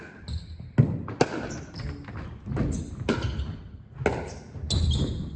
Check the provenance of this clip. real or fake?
real